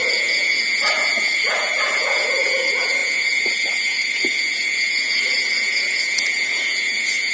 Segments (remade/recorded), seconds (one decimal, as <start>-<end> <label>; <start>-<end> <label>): 0.0-7.3 remade